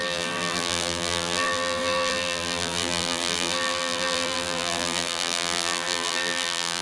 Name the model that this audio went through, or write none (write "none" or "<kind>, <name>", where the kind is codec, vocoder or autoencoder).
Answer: vocoder, BigVGAN v2